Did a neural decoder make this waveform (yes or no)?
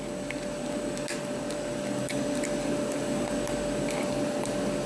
no